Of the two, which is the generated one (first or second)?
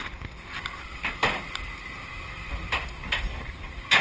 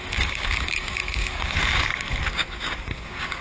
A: second